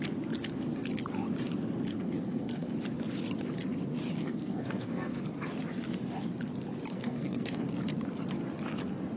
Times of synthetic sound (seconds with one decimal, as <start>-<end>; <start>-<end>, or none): 1.9-2.7; 4.2-5.2; 6.9-7.6

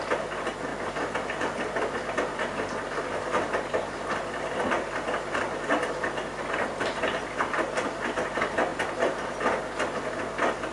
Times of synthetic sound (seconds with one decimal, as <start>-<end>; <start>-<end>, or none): none

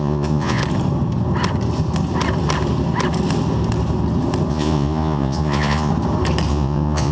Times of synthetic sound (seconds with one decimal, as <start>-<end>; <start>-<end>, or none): 0.0-0.6; 4.5-5.9; 6.5-7.1